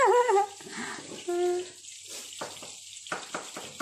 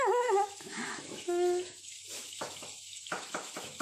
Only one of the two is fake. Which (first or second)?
second